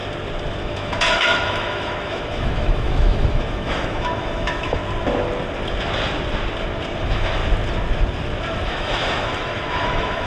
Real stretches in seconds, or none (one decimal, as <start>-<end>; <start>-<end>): 0.0-0.6; 4.8-7.0; 7.4-8.7